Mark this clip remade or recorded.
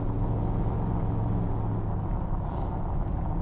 recorded